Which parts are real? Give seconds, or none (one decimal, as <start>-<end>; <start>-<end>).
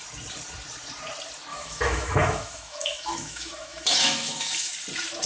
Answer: 0.0-1.5; 4.7-5.3